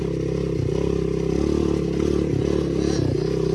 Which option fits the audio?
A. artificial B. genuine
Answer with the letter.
B